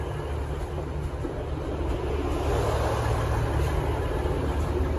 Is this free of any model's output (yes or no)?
yes